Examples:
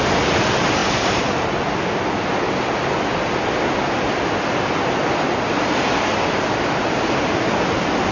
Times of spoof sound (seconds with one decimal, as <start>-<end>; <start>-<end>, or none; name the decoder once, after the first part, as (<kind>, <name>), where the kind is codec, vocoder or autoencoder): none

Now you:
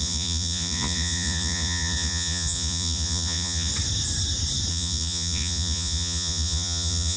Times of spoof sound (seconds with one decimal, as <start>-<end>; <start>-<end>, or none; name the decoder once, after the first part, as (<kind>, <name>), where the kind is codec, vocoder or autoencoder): 0.0-3.7 (vocoder, Vocos); 4.7-7.2

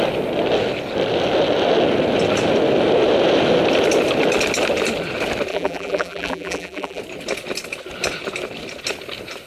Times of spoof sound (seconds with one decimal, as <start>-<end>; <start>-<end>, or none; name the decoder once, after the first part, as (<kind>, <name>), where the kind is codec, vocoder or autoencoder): 5.5-7.0 (vocoder, BigVGAN v2)